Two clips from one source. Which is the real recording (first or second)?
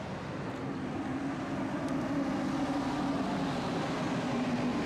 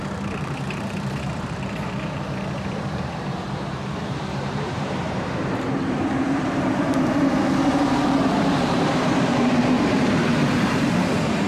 first